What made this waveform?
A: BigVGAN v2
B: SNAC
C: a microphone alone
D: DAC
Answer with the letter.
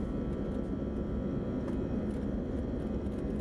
C